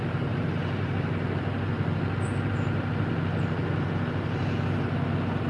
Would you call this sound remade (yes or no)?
no